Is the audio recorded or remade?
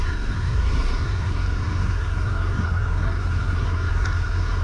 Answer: remade